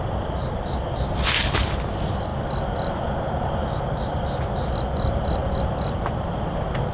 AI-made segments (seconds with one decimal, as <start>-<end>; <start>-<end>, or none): none